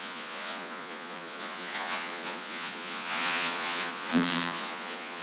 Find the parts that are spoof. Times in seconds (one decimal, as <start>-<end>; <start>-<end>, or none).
0.0-5.2